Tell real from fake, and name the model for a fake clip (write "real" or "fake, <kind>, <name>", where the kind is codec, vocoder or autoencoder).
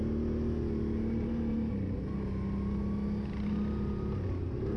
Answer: real